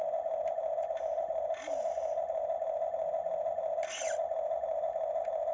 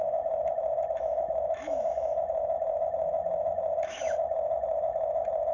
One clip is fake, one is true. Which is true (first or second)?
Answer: first